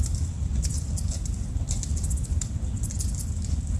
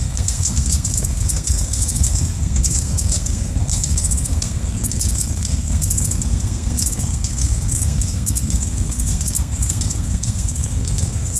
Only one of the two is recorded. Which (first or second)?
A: first